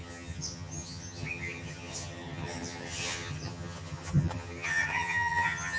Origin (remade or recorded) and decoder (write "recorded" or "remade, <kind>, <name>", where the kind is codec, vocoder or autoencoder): remade, vocoder, HiFi-GAN